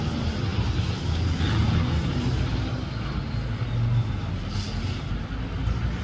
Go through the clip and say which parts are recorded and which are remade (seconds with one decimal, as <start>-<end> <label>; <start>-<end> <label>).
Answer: 0.0-6.0 recorded